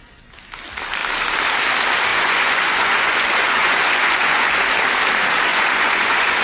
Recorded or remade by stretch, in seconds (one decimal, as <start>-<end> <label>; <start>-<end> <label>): 0.0-2.1 recorded; 2.1-4.7 remade; 4.7-5.5 recorded; 5.5-6.4 remade